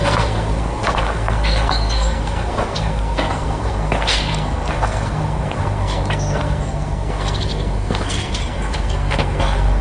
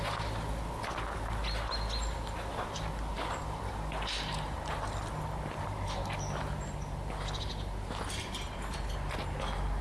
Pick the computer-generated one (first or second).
first